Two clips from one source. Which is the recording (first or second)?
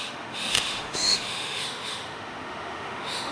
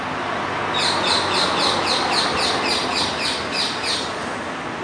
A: second